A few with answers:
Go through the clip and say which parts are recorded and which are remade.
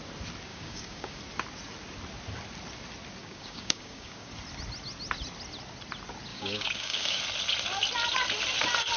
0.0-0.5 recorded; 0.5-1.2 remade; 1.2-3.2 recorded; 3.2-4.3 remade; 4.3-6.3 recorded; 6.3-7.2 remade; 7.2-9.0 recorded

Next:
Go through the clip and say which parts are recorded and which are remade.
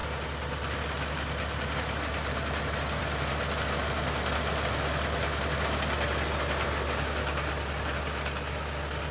0.0-9.1 recorded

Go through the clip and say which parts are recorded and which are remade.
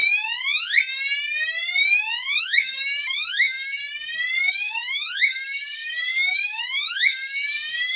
0.0-2.4 recorded; 2.4-3.8 remade; 3.8-4.5 recorded; 4.5-8.0 remade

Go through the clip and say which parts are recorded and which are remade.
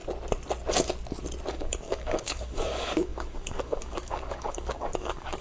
0.0-1.5 recorded; 1.5-5.4 remade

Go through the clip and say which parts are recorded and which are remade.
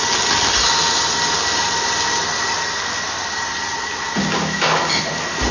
0.0-4.2 recorded; 4.2-5.0 remade; 5.0-5.5 recorded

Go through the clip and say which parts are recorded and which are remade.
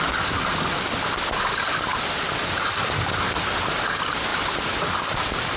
0.0-5.6 recorded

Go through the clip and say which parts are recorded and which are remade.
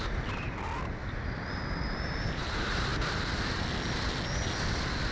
0.0-5.1 recorded